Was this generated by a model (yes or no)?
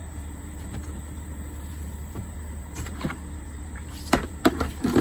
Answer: yes